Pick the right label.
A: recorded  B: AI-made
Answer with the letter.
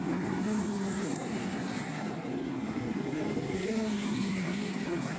B